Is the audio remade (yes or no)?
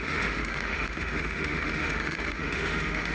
yes